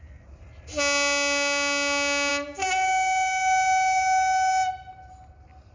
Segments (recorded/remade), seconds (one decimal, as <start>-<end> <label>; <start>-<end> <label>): 0.0-5.7 recorded